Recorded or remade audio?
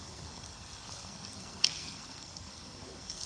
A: remade